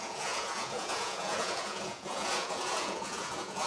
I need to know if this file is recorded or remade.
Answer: remade